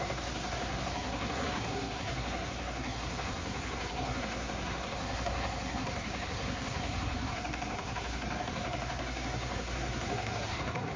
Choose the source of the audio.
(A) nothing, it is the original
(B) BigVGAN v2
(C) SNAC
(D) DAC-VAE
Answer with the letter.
C